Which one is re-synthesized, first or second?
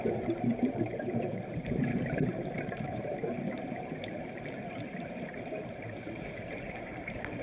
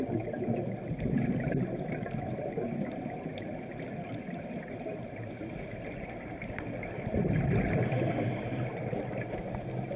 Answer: first